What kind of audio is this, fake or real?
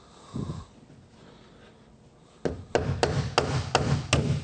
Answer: real